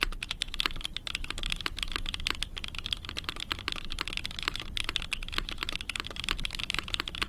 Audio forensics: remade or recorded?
remade